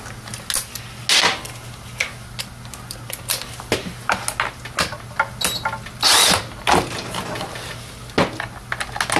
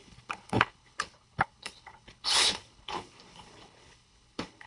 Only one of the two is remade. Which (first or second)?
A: second